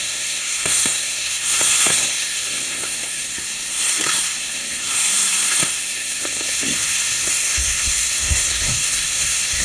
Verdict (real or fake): fake